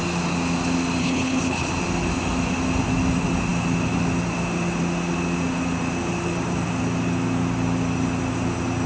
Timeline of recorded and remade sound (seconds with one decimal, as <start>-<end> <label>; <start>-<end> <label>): 0.0-1.0 recorded; 1.0-1.7 remade; 1.7-8.9 recorded